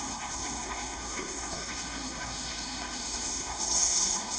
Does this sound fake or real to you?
fake